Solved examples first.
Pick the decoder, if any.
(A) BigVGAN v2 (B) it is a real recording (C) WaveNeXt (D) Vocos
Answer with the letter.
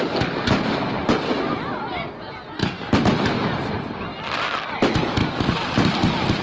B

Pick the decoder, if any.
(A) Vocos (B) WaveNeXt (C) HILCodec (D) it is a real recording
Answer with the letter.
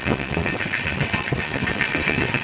B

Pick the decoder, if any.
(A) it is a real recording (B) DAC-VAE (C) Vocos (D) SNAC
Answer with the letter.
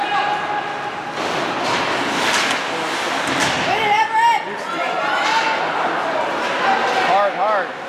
A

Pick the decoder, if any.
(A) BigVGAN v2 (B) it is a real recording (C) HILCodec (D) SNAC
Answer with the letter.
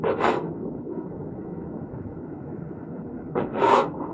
D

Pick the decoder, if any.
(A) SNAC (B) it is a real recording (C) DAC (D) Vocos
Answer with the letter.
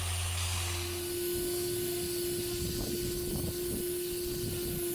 B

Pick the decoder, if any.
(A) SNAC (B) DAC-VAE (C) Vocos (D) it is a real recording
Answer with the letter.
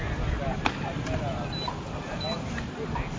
D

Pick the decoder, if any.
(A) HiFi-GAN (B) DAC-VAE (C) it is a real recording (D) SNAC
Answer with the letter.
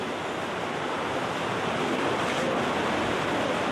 C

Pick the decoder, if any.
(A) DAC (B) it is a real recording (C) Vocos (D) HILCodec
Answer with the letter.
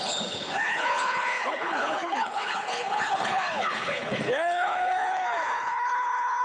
D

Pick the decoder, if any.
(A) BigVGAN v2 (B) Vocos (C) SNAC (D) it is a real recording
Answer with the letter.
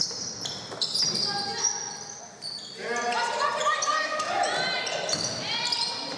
D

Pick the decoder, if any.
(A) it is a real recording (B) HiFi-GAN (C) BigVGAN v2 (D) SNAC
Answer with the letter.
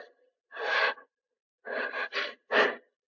C